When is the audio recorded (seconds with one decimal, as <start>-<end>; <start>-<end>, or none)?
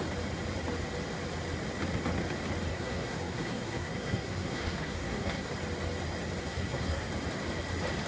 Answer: 0.0-2.7; 5.5-6.4; 7.1-8.1